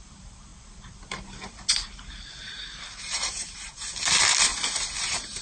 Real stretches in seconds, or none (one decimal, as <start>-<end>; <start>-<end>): 0.0-2.4; 3.8-4.5